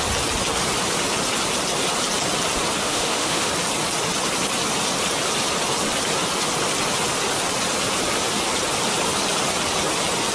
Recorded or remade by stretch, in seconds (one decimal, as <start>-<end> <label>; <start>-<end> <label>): 0.0-2.8 recorded; 2.8-3.5 remade; 3.5-10.3 recorded